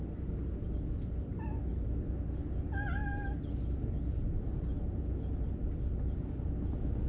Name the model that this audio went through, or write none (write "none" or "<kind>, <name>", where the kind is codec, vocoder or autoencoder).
none